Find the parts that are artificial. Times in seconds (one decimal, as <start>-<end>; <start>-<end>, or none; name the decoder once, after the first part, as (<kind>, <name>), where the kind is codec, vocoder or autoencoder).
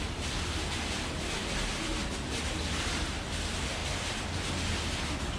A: none